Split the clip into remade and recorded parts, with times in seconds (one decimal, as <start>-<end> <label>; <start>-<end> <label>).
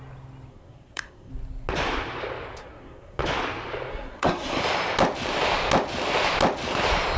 0.0-0.5 recorded; 0.5-1.3 remade; 1.3-2.6 recorded; 2.6-3.2 remade; 3.2-3.9 recorded; 3.9-4.6 remade; 4.6-7.2 recorded